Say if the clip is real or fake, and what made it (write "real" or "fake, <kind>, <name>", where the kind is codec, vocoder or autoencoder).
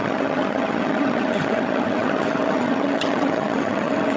fake, vocoder, HiFi-GAN